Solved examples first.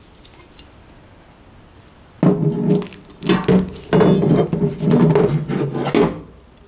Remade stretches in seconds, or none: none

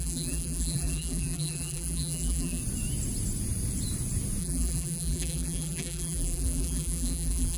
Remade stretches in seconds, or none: 0.0-2.6 (vocoder, BigVGAN v2); 4.4-7.6

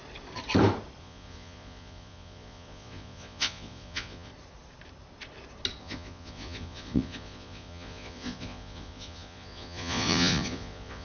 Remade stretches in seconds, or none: 1.0-4.3 (vocoder, Vocos); 5.8-11.0